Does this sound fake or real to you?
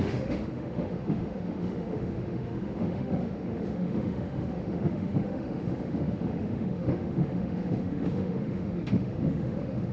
fake